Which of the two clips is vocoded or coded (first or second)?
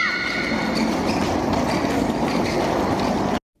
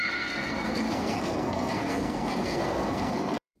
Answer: second